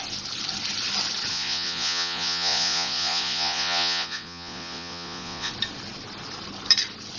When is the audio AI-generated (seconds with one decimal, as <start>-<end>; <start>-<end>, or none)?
1.3-5.5